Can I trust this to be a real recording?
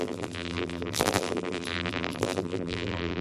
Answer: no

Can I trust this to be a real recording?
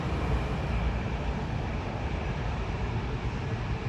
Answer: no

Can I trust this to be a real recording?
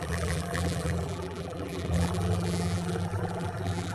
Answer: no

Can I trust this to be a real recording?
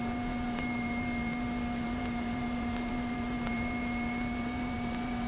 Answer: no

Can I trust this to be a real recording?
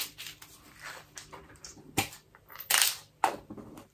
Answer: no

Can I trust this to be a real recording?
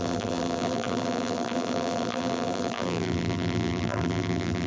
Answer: no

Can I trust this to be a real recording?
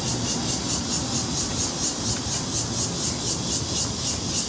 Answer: yes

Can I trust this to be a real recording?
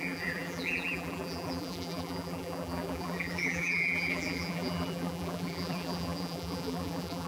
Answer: no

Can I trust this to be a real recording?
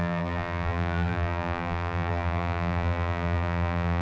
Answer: no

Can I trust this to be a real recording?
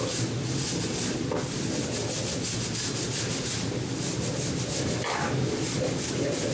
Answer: yes